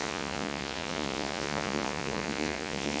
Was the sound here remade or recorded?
remade